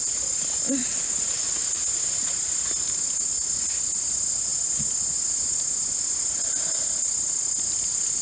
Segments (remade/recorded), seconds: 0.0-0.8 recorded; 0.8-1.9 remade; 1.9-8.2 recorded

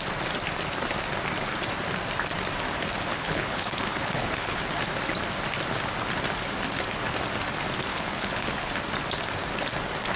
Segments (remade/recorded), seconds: 0.0-3.1 recorded; 3.1-4.6 remade; 4.6-7.9 recorded; 7.9-8.7 remade; 8.7-10.2 recorded

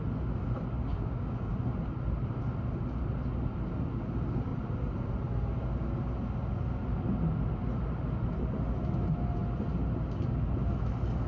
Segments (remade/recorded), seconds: 0.0-0.9 recorded; 0.9-1.5 remade; 1.5-11.3 recorded

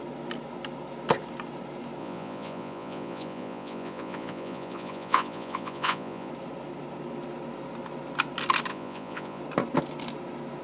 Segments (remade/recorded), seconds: 0.0-2.0 recorded; 2.0-6.3 remade; 6.3-8.7 recorded; 8.7-9.4 remade; 9.4-10.6 recorded

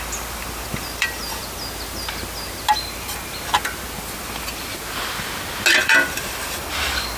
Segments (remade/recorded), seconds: 0.0-1.4 remade; 1.4-5.7 recorded; 5.7-7.2 remade

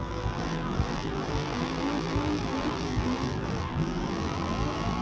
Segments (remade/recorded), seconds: 0.0-5.0 remade

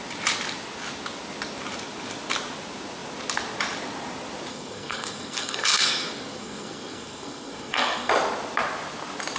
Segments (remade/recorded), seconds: 0.0-4.5 recorded; 4.5-8.1 remade; 8.1-9.4 recorded

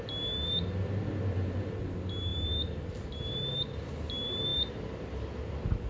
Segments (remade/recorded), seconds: 0.0-5.9 recorded